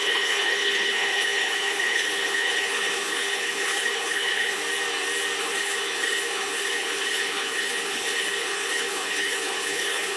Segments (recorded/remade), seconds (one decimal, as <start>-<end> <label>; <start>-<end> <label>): 0.0-4.6 remade; 4.6-5.4 recorded; 5.4-10.2 remade

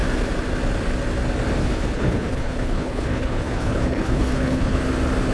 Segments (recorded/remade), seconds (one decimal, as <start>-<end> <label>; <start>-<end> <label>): 0.0-1.6 recorded; 1.6-4.8 remade; 4.8-5.3 recorded

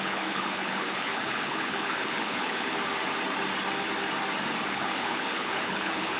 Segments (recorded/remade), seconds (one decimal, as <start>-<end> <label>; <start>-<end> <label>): 0.0-2.8 remade; 2.8-4.7 recorded; 4.7-6.2 remade

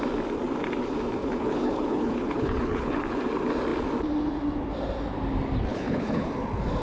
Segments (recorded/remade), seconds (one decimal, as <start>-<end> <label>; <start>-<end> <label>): 0.0-1.2 recorded; 1.2-3.0 remade; 3.0-5.7 recorded; 5.7-6.3 remade; 6.3-6.8 recorded

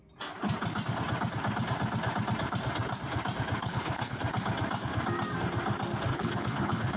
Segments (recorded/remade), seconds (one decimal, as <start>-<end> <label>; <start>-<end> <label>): 0.0-3.6 recorded; 3.6-4.2 remade; 4.2-6.1 recorded; 6.1-7.0 remade

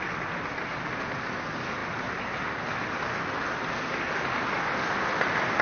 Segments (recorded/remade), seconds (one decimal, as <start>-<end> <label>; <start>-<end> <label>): 0.0-5.6 recorded